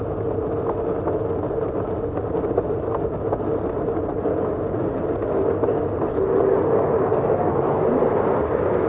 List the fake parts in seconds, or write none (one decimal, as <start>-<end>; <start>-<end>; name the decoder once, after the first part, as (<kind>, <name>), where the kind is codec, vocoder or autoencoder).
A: none